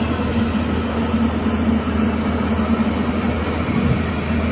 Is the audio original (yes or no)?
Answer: yes